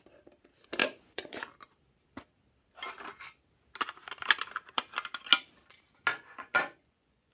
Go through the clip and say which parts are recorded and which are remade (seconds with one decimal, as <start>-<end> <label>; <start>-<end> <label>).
0.0-0.8 recorded; 0.8-1.4 remade; 1.4-6.1 recorded; 6.1-7.3 remade